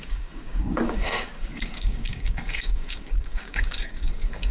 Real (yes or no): no